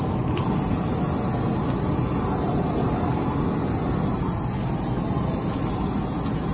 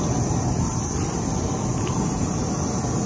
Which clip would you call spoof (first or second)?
second